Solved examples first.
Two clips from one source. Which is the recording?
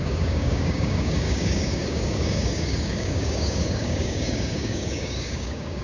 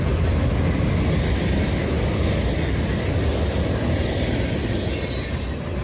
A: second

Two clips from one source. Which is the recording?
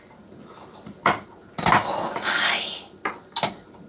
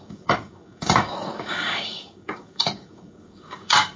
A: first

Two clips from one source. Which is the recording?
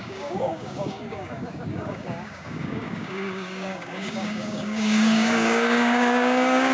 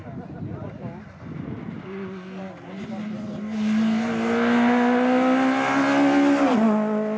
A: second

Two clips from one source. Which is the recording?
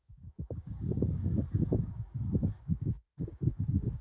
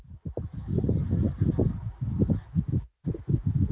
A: second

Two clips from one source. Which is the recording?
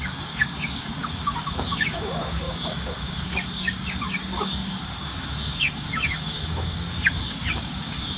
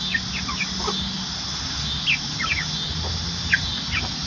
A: second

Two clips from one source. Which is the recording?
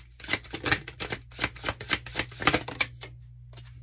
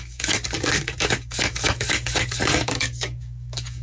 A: first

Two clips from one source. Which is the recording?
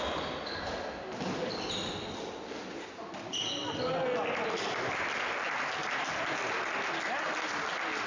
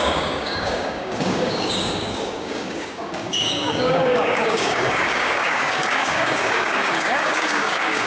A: first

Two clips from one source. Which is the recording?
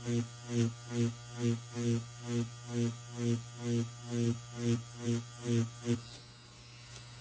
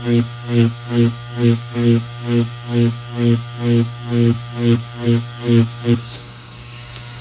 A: first